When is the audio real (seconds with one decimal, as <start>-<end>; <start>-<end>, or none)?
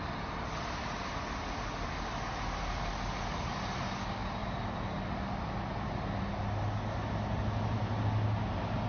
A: 0.0-8.9